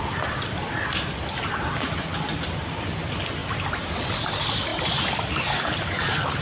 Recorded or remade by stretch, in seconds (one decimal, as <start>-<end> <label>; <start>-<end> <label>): 0.0-6.4 recorded